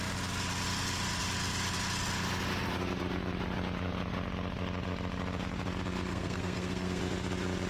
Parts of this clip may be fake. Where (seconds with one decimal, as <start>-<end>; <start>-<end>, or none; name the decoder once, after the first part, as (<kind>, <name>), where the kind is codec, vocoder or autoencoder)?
6.1-7.0 (codec, SNAC)